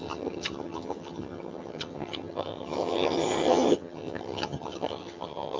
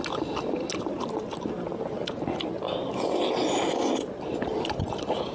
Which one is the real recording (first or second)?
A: second